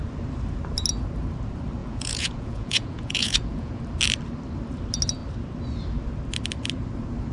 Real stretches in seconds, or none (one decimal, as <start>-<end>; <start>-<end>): 0.0-1.8; 3.8-7.3